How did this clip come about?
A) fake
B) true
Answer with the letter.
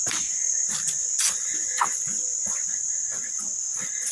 B